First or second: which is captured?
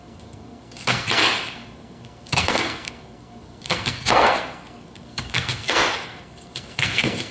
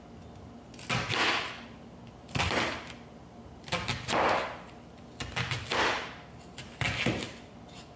second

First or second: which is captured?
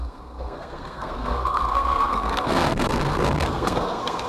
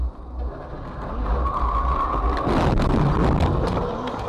second